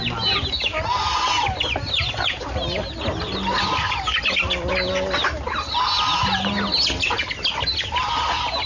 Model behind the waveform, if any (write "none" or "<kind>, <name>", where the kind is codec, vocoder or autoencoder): none